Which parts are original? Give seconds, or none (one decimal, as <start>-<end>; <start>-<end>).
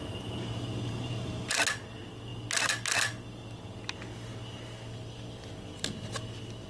1.5-6.7